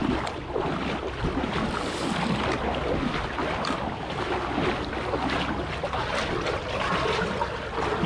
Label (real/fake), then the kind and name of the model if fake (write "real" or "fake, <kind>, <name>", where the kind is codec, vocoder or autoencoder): real